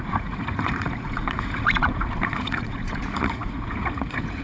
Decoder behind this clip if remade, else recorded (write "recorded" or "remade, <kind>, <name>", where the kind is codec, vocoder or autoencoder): remade, vocoder, Vocos